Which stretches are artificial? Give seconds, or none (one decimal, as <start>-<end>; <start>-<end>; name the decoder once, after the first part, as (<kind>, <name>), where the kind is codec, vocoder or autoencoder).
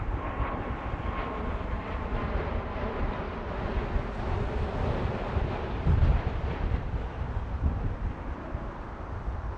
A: none